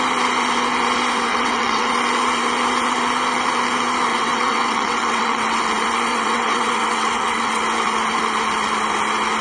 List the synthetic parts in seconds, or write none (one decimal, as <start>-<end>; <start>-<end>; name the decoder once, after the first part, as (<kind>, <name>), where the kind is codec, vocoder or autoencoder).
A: 1.3-1.9 (vocoder, WaveNeXt); 4.1-5.6; 6.1-7.6